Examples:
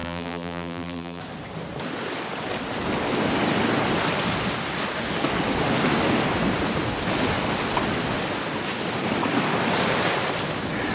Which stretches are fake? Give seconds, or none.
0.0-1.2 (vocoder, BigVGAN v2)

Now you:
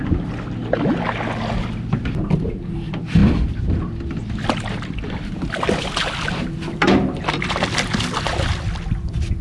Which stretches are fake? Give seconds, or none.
none

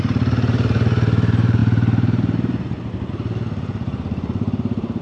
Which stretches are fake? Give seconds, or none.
0.0-5.0 (vocoder, BigVGAN v2)

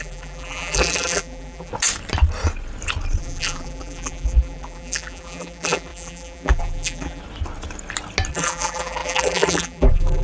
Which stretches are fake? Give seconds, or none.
0.0-1.7 (vocoder, BigVGAN v2); 3.2-7.2; 8.3-10.2

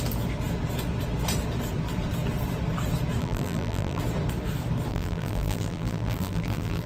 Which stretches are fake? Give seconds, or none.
3.2-4.0 (vocoder, BigVGAN v2); 4.9-6.9

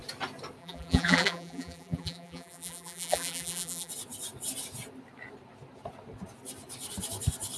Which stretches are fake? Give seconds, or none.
0.6-3.9 (vocoder, BigVGAN v2)

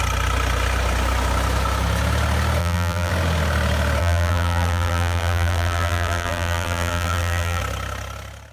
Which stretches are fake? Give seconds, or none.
2.6-3.1 (vocoder, BigVGAN v2); 4.0-7.6

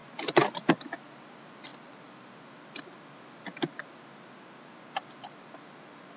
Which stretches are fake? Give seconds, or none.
0.0-0.7 (vocoder, BigVGAN v2)